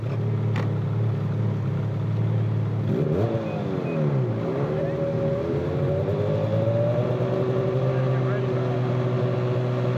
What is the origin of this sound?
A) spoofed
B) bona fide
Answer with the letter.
B